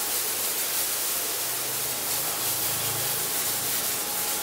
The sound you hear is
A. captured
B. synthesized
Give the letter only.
A